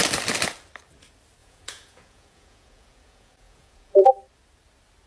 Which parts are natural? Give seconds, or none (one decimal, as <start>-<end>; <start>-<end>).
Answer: 0.0-1.4; 4.1-5.1